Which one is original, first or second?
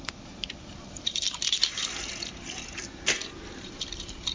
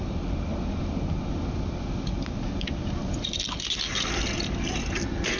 second